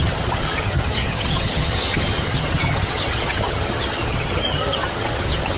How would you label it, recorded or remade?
remade